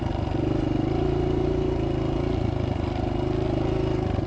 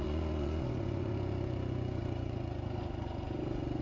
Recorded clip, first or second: first